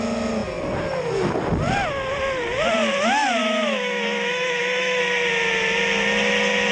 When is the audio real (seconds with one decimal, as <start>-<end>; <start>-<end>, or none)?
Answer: 0.0-3.4; 5.0-6.7